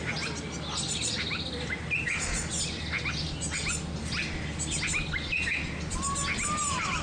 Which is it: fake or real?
real